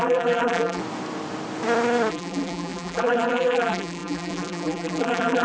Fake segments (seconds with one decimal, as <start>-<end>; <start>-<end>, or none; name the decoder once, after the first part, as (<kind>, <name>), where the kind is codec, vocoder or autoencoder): 0.0-0.8 (vocoder, BigVGAN v2); 2.1-5.4